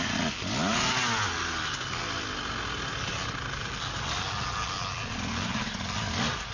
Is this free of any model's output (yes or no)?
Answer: yes